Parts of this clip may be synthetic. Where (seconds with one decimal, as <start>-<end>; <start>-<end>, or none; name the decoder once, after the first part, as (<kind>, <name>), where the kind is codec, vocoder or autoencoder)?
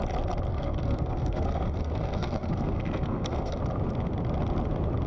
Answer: 0.5-3.6 (codec, SNAC)